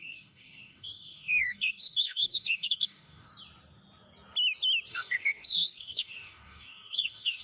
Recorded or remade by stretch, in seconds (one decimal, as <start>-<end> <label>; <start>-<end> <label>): 0.0-3.3 remade; 3.3-4.9 recorded; 4.9-7.4 remade